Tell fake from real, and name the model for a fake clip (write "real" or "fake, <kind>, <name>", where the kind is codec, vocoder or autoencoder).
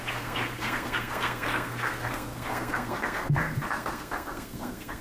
fake, codec, SNAC